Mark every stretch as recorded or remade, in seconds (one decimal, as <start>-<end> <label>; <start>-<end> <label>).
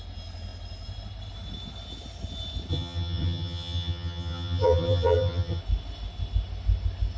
0.0-2.7 recorded; 2.7-5.6 remade; 5.6-7.2 recorded